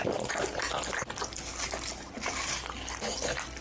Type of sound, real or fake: real